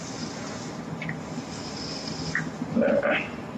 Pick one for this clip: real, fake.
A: real